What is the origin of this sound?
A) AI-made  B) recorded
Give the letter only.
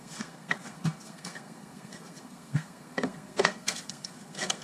A